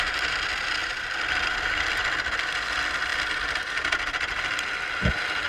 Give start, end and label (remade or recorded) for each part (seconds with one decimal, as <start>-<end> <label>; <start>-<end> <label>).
0.0-5.5 recorded